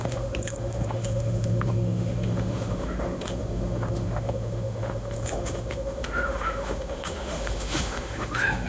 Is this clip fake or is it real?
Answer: fake